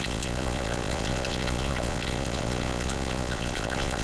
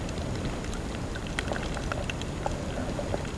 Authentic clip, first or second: second